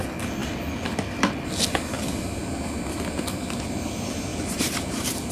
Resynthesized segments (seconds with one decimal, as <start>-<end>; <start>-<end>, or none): 4.3-5.3